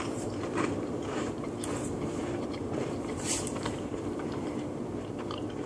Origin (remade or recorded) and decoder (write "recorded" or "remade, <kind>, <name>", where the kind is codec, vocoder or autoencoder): remade, vocoder, BigVGAN v2